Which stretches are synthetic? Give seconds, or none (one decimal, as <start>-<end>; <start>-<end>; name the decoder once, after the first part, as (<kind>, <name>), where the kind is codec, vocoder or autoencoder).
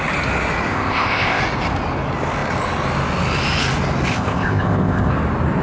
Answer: 0.7-1.4 (codec, ZipCodec); 4.1-5.1